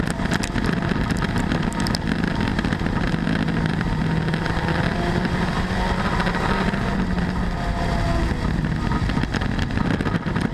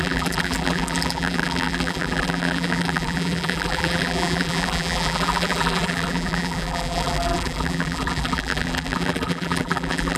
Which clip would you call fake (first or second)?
second